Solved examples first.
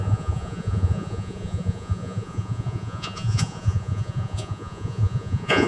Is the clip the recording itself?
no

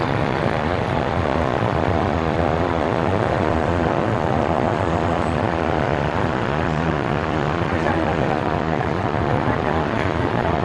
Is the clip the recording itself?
no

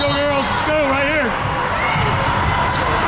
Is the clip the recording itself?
yes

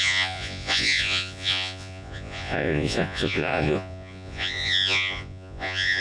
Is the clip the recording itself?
no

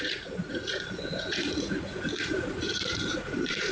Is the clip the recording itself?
no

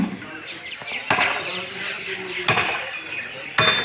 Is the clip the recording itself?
yes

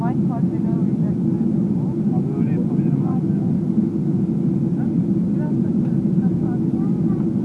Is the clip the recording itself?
yes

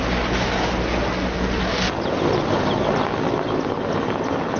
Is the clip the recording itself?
yes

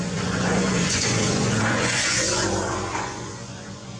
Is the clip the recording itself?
no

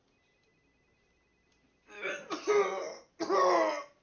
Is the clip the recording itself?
yes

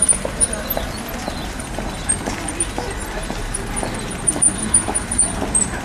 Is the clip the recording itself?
yes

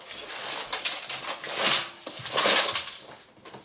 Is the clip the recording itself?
yes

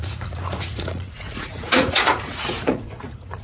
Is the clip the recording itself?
no